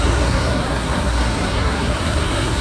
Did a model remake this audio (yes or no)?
yes